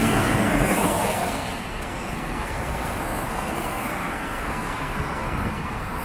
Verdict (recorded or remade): remade